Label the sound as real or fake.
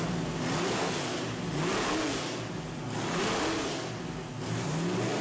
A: real